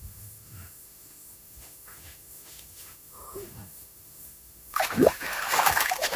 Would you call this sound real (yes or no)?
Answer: no